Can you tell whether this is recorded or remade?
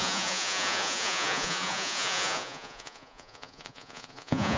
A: remade